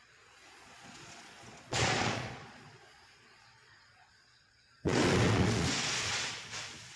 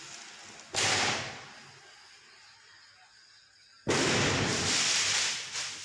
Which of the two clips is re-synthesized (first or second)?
first